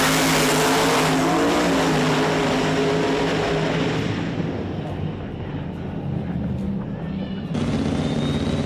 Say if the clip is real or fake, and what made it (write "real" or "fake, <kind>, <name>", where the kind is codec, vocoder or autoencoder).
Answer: real